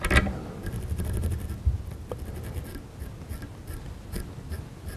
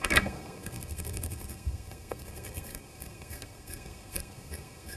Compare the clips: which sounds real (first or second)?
first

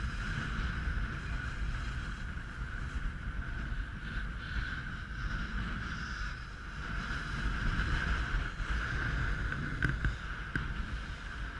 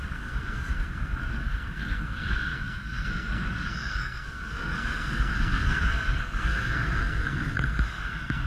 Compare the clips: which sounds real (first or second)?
first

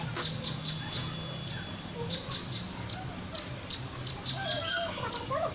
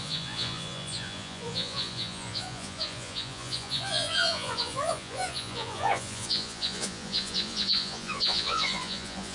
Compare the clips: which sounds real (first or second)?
first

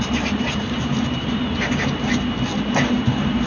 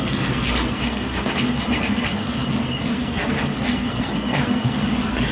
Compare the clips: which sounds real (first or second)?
first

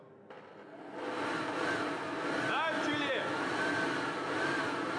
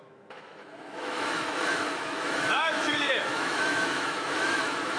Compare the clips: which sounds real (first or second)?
first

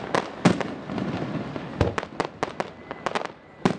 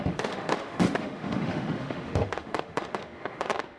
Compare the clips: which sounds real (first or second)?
first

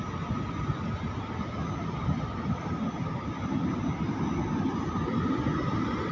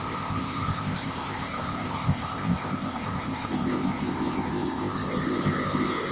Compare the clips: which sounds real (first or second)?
first